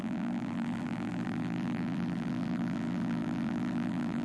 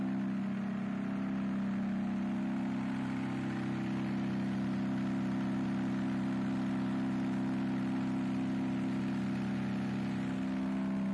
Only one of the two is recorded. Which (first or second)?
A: second